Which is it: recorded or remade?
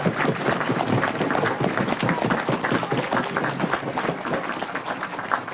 recorded